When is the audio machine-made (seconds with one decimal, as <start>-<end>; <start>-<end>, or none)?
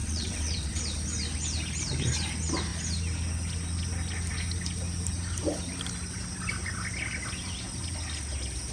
0.0-0.8